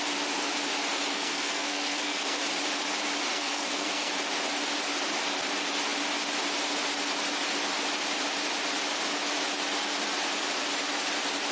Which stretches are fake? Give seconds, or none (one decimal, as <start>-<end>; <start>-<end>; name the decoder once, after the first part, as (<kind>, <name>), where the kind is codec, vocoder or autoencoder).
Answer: 1.1-2.4 (codec, SNAC); 3.3-4.1